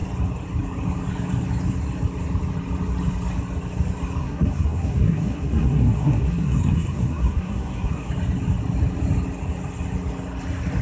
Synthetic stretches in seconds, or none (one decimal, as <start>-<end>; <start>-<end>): 4.2-8.1